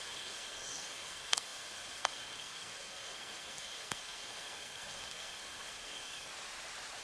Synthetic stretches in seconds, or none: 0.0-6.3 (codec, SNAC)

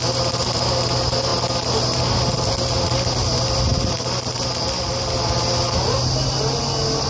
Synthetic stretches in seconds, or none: none

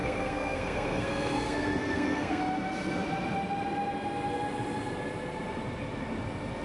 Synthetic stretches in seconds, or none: 0.0-2.4 (codec, SNAC)

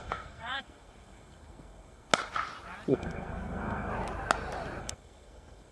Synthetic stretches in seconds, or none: 0.0-2.1 (codec, SNAC); 2.9-3.9; 4.8-5.7